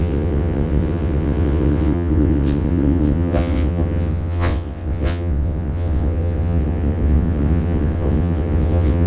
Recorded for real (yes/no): no